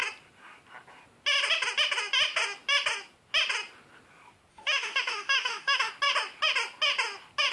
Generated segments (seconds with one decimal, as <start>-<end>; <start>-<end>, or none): 4.5-5.9